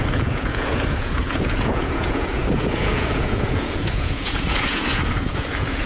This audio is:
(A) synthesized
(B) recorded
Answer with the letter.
A